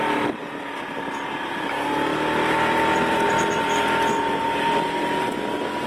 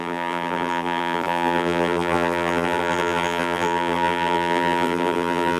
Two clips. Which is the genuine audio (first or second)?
first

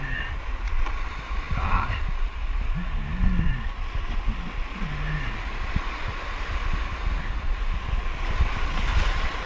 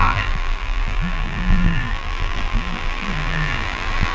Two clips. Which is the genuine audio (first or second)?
first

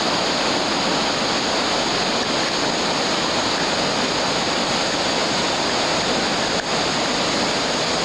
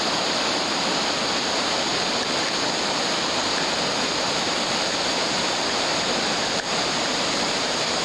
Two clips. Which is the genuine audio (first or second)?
first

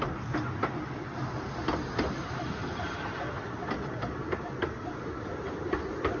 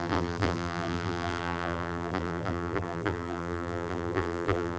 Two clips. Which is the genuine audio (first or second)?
first